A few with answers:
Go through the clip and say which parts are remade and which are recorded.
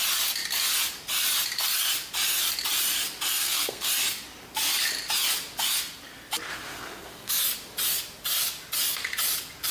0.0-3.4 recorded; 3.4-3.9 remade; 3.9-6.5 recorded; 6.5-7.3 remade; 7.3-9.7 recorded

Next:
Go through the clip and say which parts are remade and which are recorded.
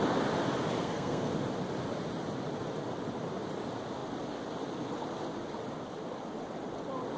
0.0-0.8 recorded; 0.8-1.3 remade; 1.3-7.2 recorded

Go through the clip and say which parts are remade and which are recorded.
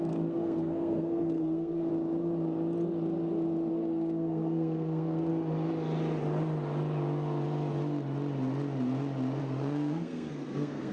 0.0-1.9 remade; 1.9-3.7 recorded; 3.7-5.3 remade; 5.3-9.4 recorded; 9.4-10.9 remade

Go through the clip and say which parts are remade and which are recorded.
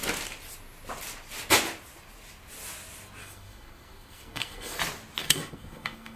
0.0-3.2 recorded; 3.2-4.8 remade; 4.8-5.2 recorded; 5.2-6.2 remade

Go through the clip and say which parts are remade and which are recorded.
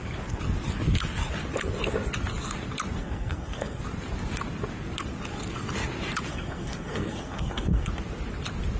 0.0-3.0 recorded; 3.0-3.8 remade; 3.8-6.3 recorded; 6.3-7.9 remade; 7.9-8.8 recorded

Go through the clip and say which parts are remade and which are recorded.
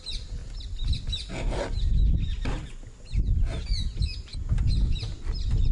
0.0-5.7 recorded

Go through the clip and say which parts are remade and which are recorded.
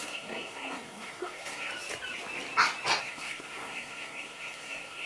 0.0-1.7 remade; 1.7-3.0 recorded; 3.0-5.1 remade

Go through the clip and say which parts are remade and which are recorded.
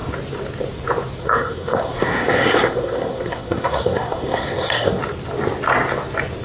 0.0-1.2 recorded; 1.2-5.0 remade; 5.0-6.4 recorded